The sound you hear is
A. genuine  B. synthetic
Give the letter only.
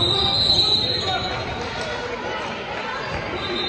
A